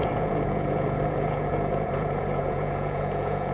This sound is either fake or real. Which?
fake